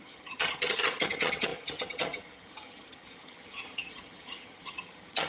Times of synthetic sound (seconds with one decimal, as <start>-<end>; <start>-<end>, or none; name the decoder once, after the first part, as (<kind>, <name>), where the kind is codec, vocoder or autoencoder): 0.0-5.3 (vocoder, HiFi-GAN)